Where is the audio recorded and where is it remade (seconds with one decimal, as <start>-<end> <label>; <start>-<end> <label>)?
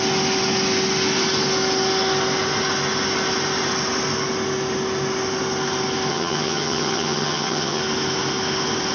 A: 0.0-6.1 recorded; 6.1-7.8 remade; 7.8-8.9 recorded